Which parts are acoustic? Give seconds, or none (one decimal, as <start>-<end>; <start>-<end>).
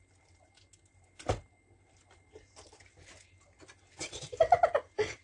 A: 0.0-5.2